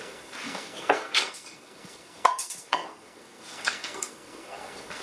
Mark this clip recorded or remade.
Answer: remade